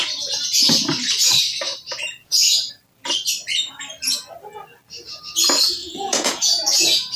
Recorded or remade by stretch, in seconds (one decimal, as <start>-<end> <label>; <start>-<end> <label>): 0.0-2.2 recorded; 2.2-2.7 remade; 2.7-5.8 recorded; 5.8-7.2 remade